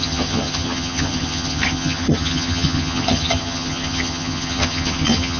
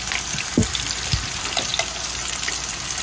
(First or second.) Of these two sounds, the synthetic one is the first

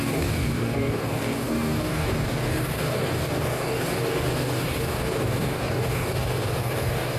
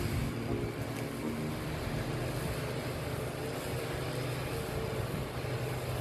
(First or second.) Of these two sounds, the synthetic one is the first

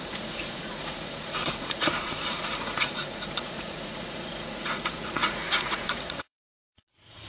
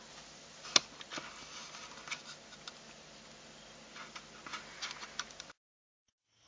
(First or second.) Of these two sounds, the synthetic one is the first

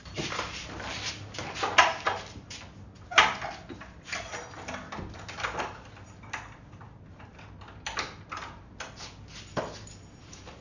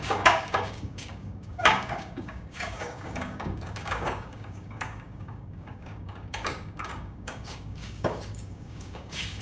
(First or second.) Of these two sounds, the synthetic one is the second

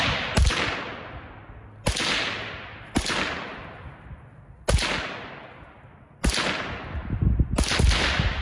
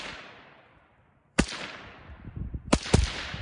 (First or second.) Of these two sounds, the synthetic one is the second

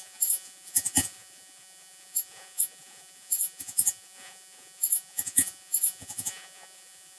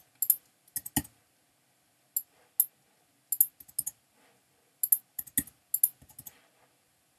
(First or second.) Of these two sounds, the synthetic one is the first